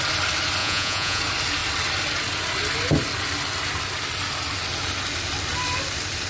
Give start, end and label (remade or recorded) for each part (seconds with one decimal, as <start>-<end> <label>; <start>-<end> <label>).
0.0-0.6 recorded; 0.6-1.2 remade; 1.2-6.3 recorded